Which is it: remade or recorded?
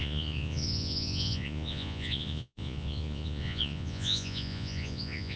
remade